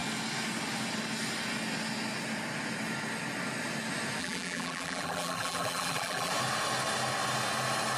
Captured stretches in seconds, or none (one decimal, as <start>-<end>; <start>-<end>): 0.0-4.2; 6.3-8.0